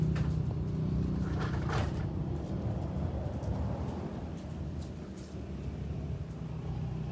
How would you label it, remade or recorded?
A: recorded